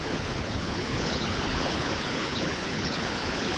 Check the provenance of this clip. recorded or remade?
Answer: remade